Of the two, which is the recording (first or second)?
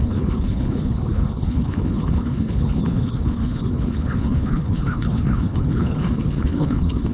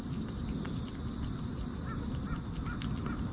second